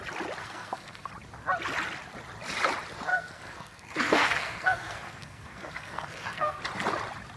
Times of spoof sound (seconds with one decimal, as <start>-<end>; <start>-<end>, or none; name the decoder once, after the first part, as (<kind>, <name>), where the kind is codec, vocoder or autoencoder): 0.4-1.1 (codec, SNAC); 3.1-6.6